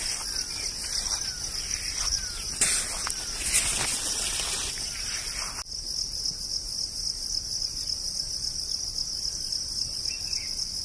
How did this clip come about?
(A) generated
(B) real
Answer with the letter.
B